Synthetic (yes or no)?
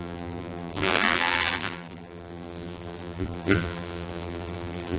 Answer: yes